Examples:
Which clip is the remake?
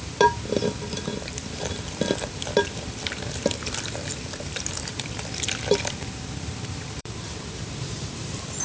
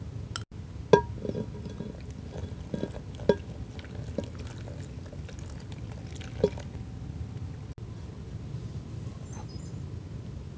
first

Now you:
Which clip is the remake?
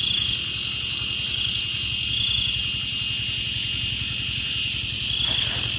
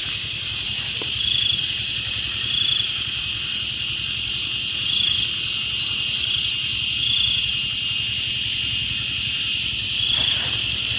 second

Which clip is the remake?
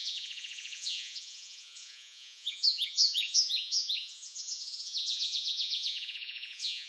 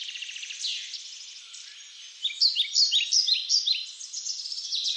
first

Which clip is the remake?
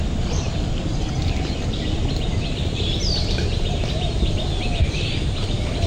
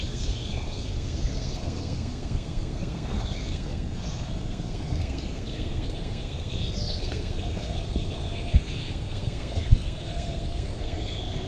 second